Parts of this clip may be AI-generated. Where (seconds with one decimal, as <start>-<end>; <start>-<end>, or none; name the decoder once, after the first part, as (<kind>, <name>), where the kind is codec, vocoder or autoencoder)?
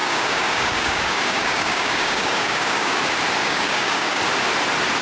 0.0-3.0 (codec, DAC); 3.4-4.2